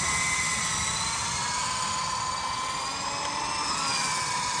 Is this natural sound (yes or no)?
yes